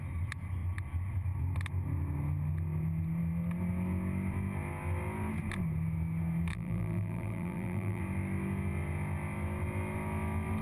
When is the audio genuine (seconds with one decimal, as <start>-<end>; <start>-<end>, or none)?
0.0-6.5; 8.0-10.6